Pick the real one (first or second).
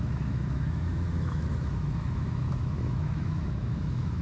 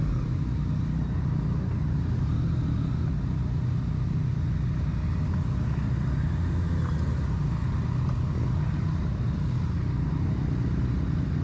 second